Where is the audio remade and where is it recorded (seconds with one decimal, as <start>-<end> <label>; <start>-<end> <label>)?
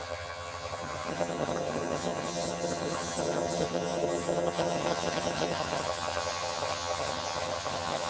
0.0-8.1 remade